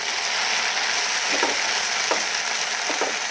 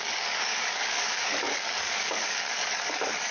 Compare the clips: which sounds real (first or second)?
first